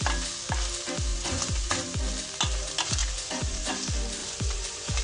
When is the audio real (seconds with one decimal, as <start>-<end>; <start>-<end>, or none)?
0.0-1.1; 1.7-3.0; 3.7-4.2